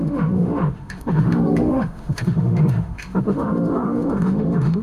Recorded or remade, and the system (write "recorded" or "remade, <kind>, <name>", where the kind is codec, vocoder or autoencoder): remade, autoencoder, DAC-VAE